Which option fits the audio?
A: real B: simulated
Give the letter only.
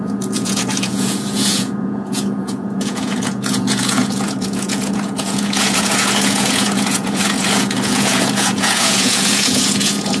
B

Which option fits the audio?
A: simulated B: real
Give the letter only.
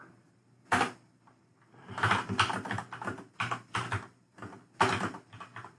B